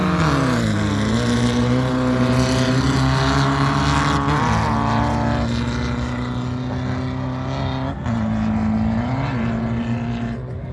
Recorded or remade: recorded